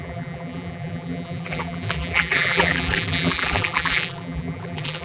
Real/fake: fake